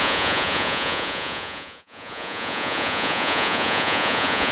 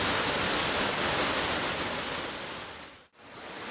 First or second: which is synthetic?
first